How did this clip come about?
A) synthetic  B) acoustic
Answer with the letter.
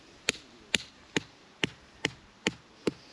A